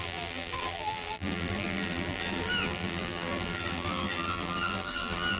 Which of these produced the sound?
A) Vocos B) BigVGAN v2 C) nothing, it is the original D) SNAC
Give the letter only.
B